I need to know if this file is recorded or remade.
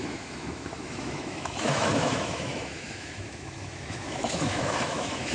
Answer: remade